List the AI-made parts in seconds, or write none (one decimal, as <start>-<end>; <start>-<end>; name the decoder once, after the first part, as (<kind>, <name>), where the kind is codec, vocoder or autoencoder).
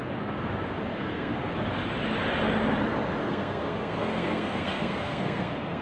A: 0.9-1.5 (codec, SNAC); 3.2-5.8